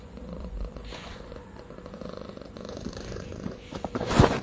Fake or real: fake